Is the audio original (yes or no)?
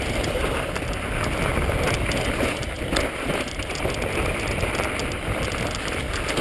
yes